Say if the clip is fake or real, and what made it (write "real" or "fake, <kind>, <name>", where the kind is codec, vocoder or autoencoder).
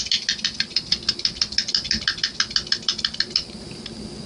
real